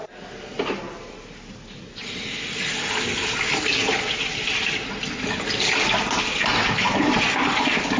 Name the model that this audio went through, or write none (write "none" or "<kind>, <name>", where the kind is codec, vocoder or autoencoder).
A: none